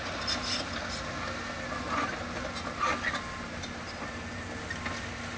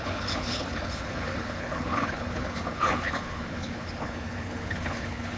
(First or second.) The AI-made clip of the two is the second